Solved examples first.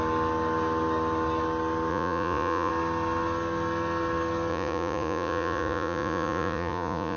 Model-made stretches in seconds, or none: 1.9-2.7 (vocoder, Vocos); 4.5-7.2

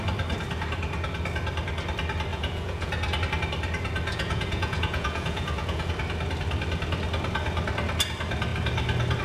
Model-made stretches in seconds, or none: 2.3-2.9 (vocoder, Vocos); 4.1-5.9

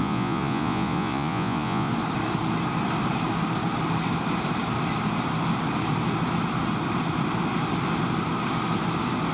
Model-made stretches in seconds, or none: 0.0-1.9 (vocoder, Vocos)

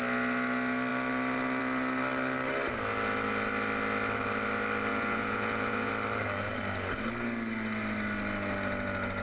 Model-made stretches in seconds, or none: 4.9-5.9 (vocoder, Vocos)